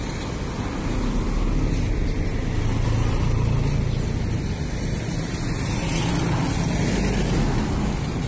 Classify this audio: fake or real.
real